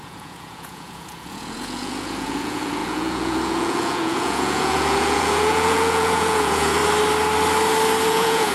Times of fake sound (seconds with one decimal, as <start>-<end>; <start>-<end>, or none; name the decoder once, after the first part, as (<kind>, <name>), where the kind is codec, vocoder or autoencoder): 0.0-6.8 (vocoder, Vocos); 8.1-8.5